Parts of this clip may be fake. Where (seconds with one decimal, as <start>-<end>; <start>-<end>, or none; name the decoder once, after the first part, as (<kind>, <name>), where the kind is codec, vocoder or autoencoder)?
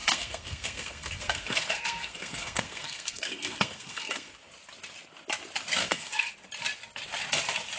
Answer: 0.0-4.3 (codec, SNAC); 5.8-6.3